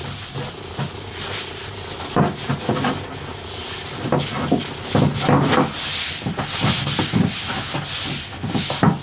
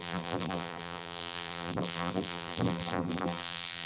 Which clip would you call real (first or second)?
first